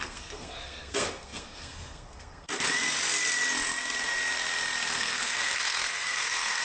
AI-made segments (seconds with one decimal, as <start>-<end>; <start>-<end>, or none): 0.0-2.5; 5.0-6.6